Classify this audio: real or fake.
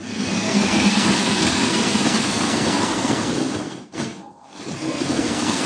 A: fake